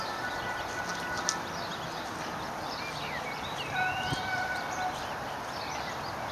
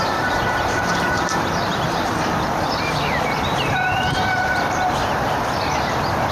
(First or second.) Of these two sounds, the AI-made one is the second